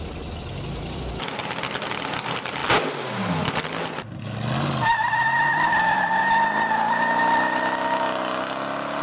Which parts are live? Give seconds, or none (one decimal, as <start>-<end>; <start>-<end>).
0.0-5.5; 6.2-9.0